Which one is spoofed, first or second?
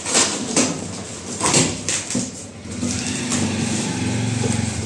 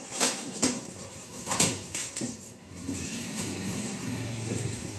second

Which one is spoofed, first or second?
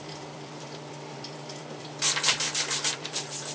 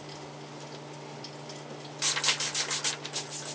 first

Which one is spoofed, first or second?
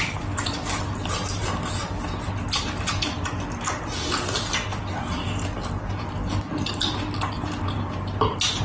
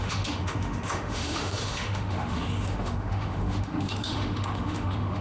second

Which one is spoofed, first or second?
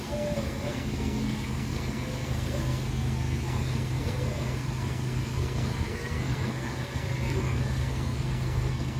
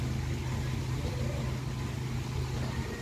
first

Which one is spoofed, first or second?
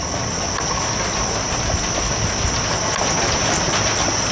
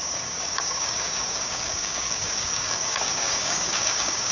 second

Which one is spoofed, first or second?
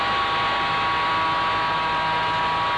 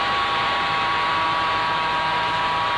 second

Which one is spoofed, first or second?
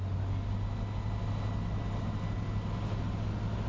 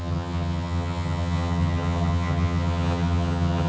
second